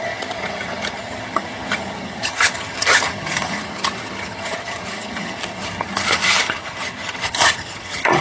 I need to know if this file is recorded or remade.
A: remade